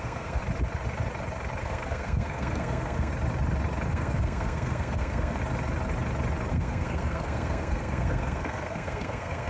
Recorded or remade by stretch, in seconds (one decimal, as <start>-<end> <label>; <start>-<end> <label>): 0.0-0.4 remade; 0.4-1.6 recorded; 1.6-3.1 remade; 3.1-3.9 recorded; 3.9-5.4 remade; 5.4-6.5 recorded; 6.5-9.5 remade